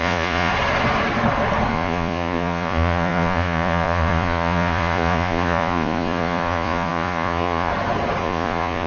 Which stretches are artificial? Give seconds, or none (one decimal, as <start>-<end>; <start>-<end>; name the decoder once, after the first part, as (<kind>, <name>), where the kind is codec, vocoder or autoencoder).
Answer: 0.0-0.5 (vocoder, Vocos); 1.7-7.7; 8.2-8.9

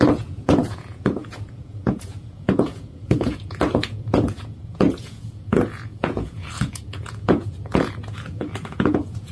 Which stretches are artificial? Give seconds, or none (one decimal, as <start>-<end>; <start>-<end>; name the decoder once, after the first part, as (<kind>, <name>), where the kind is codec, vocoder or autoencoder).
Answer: 0.0-9.3 (vocoder, Vocos)